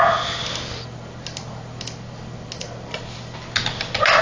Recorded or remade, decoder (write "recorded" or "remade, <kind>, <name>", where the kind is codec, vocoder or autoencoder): recorded